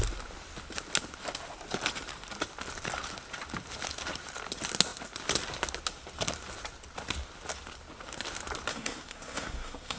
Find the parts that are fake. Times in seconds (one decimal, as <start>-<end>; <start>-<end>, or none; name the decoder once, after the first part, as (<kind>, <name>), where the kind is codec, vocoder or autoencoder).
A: 8.7-10.0 (codec, SNAC)